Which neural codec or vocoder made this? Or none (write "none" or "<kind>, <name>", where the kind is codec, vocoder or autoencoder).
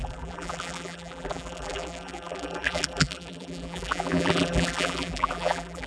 vocoder, BigVGAN v2